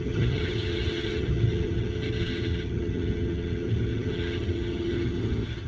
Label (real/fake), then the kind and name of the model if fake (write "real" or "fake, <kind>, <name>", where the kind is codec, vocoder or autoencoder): fake, vocoder, HiFi-GAN